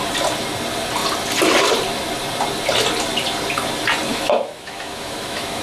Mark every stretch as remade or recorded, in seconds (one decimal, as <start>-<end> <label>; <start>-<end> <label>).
0.0-4.1 recorded; 4.1-5.6 remade